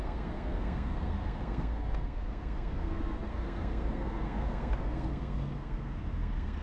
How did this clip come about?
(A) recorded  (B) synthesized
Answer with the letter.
B